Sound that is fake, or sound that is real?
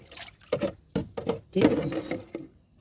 real